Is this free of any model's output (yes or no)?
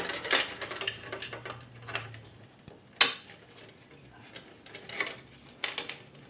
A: yes